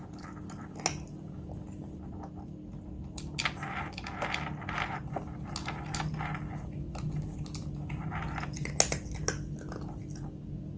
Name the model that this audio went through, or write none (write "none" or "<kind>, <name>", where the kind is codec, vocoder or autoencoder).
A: none